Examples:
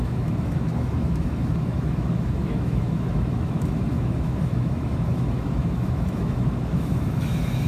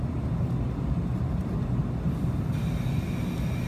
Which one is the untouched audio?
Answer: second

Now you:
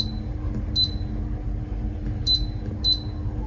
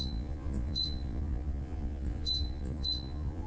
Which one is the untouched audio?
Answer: first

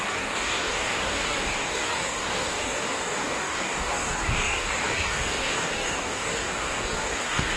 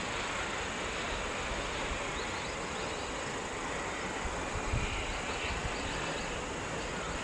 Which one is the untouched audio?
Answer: second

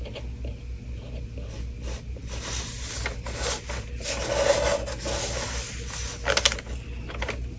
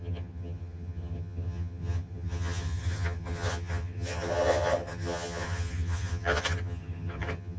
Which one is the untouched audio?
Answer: first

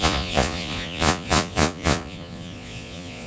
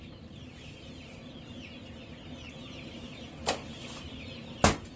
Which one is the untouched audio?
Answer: second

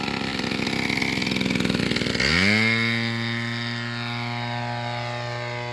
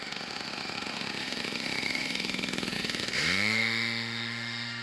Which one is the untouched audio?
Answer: first